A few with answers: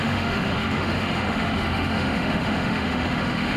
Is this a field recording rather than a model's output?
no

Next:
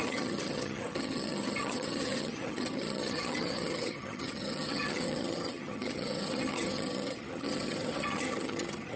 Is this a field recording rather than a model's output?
no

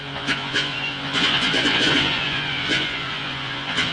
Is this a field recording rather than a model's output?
no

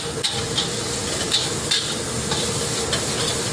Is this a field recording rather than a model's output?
yes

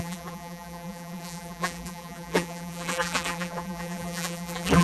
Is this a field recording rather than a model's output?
no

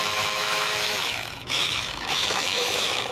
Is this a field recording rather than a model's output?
no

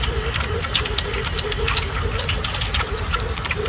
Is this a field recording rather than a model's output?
yes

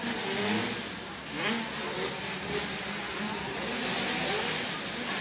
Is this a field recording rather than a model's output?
yes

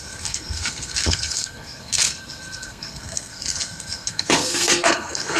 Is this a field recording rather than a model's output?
no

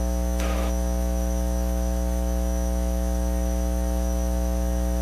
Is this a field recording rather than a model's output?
no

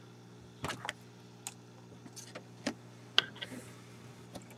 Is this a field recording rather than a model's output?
yes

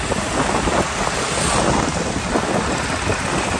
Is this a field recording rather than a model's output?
yes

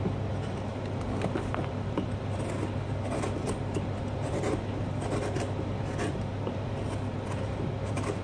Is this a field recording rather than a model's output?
yes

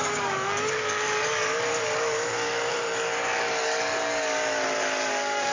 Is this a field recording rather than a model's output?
no